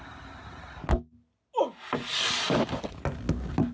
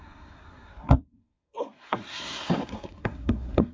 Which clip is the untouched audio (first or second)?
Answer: first